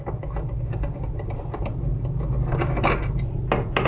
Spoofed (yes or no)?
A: no